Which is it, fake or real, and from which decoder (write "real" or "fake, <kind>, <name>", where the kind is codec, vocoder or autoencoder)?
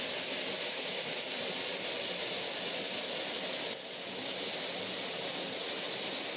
real